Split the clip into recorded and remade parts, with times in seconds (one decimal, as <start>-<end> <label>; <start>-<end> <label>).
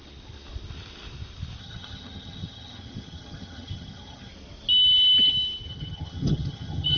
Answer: 0.0-1.6 recorded; 1.6-4.3 remade; 4.3-5.7 recorded; 5.7-7.0 remade